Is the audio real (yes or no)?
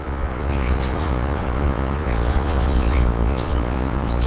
no